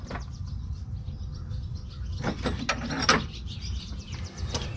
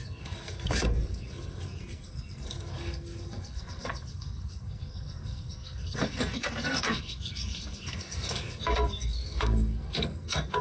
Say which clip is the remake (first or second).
second